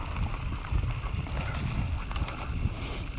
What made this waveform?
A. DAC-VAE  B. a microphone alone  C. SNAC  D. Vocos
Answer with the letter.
B